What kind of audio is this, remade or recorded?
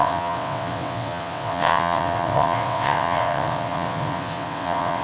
remade